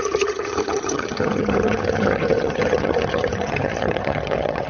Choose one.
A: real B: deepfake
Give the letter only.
B